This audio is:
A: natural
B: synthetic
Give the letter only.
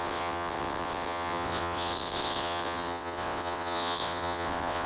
B